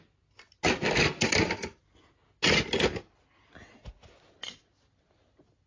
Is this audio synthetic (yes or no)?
no